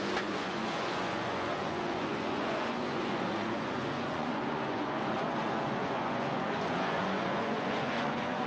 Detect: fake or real fake